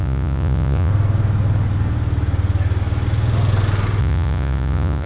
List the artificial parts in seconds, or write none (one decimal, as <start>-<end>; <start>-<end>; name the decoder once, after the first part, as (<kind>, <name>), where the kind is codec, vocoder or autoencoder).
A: 0.0-0.9 (vocoder, Vocos); 4.0-5.1